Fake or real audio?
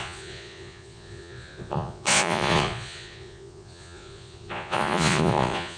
fake